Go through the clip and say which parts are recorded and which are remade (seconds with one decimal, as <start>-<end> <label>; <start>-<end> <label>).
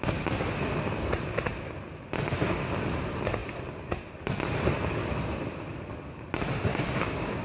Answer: 0.0-6.7 recorded; 6.7-7.4 remade